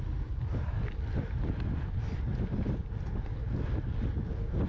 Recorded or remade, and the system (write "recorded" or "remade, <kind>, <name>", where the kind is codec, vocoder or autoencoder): recorded